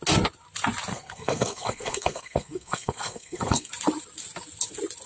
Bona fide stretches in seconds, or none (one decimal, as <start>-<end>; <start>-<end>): 0.0-0.9; 3.7-5.1